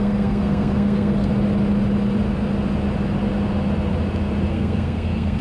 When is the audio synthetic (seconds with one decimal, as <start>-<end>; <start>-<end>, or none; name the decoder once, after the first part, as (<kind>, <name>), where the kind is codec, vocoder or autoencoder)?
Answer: 0.0-1.3 (codec, SNAC); 4.5-5.4